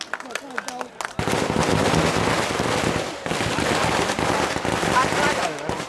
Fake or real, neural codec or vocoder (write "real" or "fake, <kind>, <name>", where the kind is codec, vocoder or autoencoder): real